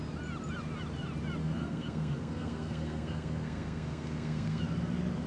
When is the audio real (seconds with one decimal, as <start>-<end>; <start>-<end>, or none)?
0.0-1.4; 4.6-5.3